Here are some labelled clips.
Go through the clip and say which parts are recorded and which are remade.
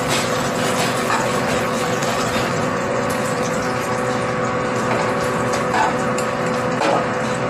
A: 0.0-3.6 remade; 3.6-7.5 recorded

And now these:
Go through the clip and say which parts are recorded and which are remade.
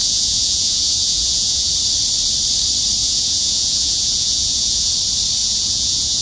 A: 0.0-1.7 remade; 1.7-3.0 recorded; 3.0-4.9 remade; 4.9-5.4 recorded; 5.4-6.2 remade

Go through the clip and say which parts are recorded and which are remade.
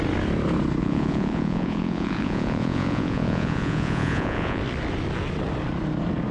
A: 0.0-0.8 recorded; 0.8-4.6 remade; 4.6-6.3 recorded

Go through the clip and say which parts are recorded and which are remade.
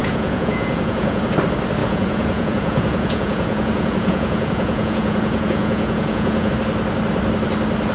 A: 0.0-1.2 remade; 1.2-1.8 recorded; 1.8-6.5 remade; 6.5-7.9 recorded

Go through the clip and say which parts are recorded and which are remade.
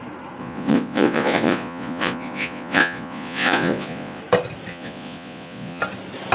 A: 0.0-0.4 recorded; 0.4-4.2 remade; 4.2-4.7 recorded; 4.7-5.8 remade; 5.8-6.3 recorded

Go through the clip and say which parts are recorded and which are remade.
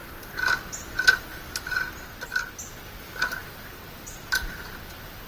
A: 0.0-5.3 recorded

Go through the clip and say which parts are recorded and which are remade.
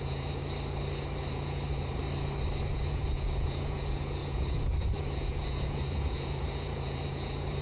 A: 0.0-0.4 remade; 0.4-1.3 recorded; 1.3-2.0 remade; 2.0-2.6 recorded; 2.6-7.6 remade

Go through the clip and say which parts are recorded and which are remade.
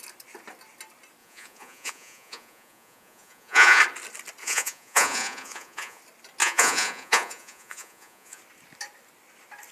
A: 0.0-1.2 recorded; 1.2-3.8 remade; 3.8-4.4 recorded; 4.4-6.0 remade; 6.0-6.4 recorded; 6.4-8.4 remade; 8.4-9.7 recorded